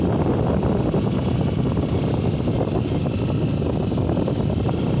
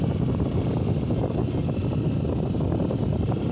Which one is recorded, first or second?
first